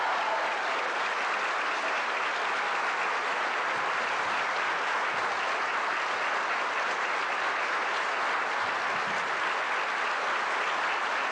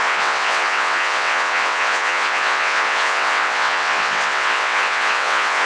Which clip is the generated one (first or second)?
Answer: second